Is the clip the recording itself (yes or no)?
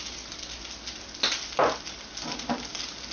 yes